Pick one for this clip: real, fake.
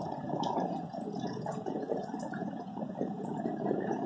fake